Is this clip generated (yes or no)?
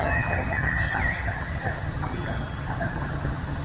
yes